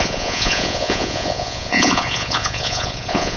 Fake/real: fake